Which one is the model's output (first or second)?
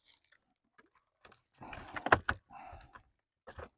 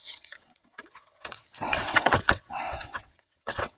second